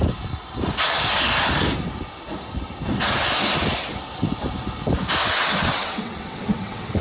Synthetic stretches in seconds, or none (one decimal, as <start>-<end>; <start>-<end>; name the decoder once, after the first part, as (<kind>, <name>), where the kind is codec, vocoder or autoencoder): 5.2-7.0 (vocoder, WaveNeXt)